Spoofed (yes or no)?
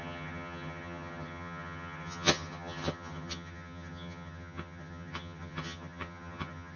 yes